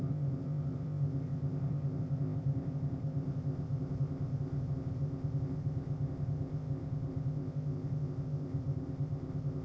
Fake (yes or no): yes